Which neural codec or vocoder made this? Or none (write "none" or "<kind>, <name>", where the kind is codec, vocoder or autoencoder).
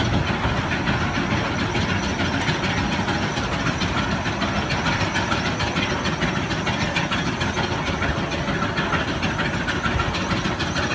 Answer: none